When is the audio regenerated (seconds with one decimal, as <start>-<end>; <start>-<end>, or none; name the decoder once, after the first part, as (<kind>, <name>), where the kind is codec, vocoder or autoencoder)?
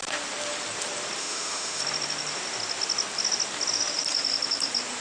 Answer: 1.2-1.8 (autoencoder, DAC-VAE)